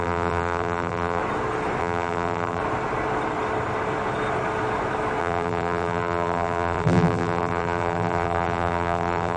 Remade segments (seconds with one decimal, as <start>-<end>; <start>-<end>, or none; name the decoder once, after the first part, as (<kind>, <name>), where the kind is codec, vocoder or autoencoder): 0.0-1.2 (vocoder, BigVGAN v2); 1.8-2.6; 5.2-9.4